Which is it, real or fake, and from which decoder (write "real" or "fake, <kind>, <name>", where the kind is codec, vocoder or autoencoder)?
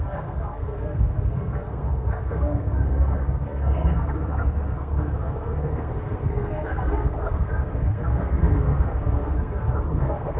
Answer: fake, codec, SNAC